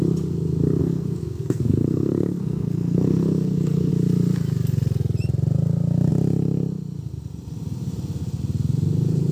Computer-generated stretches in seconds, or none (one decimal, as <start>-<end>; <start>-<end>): 0.8-3.9